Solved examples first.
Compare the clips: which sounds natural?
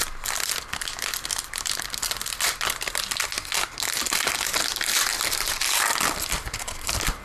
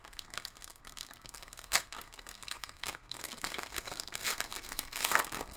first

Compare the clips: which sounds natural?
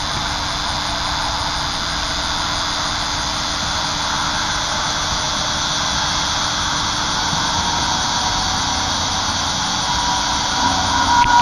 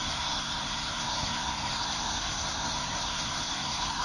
first